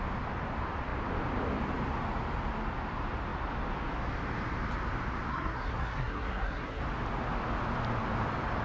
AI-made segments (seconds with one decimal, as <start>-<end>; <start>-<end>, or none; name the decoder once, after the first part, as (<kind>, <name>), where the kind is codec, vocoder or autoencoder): 5.3-6.8 (codec, SNAC)